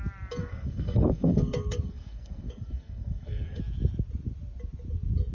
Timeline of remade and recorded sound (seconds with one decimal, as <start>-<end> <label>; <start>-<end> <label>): 0.0-0.4 recorded; 0.4-3.6 remade; 3.6-5.3 recorded